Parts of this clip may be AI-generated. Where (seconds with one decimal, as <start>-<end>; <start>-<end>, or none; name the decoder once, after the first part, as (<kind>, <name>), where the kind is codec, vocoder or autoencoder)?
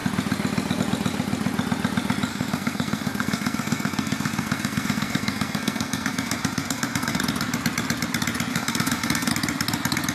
2.3-7.2 (codec, SNAC); 8.5-9.3